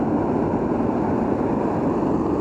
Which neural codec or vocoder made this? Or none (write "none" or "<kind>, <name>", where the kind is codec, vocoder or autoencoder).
none